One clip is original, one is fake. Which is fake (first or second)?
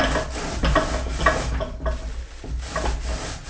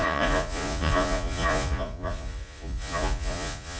second